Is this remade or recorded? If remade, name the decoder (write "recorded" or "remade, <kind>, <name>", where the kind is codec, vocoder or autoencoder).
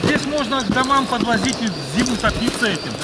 recorded